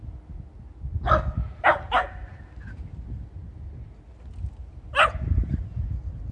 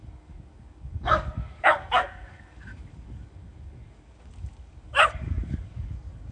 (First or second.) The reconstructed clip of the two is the second